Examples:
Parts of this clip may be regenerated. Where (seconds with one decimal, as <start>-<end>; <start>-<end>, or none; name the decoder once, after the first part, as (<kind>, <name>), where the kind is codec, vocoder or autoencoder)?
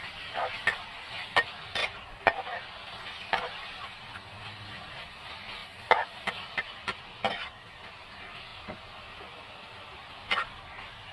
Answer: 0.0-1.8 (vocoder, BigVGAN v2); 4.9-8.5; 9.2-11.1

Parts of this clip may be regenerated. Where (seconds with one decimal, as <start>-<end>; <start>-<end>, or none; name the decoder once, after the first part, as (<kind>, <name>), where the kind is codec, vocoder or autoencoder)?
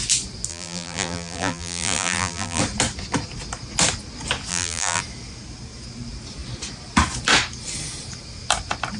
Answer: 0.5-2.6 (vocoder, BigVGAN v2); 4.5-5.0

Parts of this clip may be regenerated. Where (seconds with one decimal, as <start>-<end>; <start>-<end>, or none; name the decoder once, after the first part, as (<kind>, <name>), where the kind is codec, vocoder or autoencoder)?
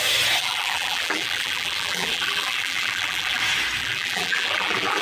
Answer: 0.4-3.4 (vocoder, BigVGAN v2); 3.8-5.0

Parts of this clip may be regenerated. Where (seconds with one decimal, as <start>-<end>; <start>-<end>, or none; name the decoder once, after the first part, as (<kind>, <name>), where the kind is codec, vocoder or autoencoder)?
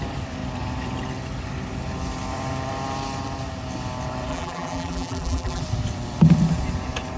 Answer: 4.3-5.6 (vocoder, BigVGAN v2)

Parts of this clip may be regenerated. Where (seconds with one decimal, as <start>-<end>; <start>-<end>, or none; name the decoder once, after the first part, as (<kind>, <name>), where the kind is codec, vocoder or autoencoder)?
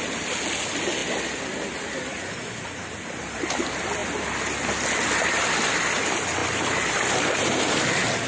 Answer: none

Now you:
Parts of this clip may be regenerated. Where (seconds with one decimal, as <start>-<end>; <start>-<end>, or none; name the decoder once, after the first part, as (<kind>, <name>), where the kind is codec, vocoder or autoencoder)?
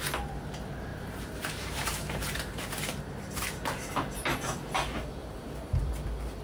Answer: 0.9-4.7 (vocoder, BigVGAN v2); 5.2-5.9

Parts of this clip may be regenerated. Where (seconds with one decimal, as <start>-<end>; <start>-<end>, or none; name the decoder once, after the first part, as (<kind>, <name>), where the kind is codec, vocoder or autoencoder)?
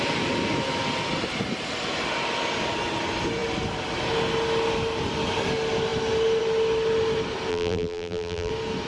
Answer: 7.5-8.5 (vocoder, BigVGAN v2)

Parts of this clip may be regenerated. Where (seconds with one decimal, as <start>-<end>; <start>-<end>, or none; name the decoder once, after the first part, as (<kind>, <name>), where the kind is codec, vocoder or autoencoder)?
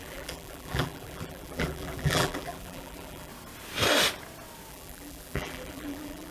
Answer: 0.0-3.3 (vocoder, BigVGAN v2); 4.7-6.3